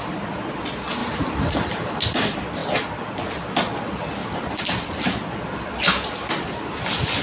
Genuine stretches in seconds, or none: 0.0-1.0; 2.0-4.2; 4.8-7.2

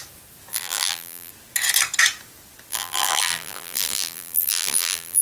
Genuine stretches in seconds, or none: 0.0-0.5; 1.3-2.7

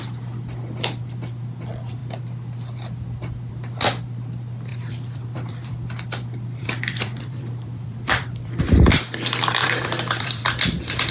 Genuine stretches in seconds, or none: 0.0-4.7; 8.6-9.6